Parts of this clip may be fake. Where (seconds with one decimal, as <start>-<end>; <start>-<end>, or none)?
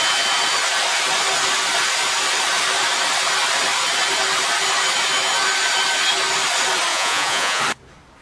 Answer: 6.9-7.6